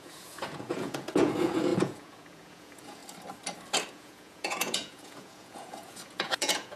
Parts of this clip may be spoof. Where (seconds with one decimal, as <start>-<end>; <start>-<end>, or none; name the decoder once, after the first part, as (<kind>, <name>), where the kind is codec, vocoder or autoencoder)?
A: 0.0-3.0 (vocoder, Vocos); 3.9-6.8